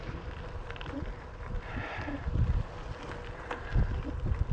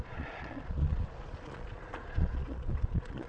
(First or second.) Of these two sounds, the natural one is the first